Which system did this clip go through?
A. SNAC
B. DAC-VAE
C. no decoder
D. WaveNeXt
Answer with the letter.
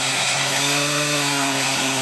A